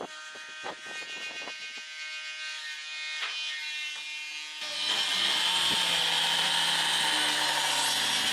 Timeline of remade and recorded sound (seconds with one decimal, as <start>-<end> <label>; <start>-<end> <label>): 0.0-8.3 recorded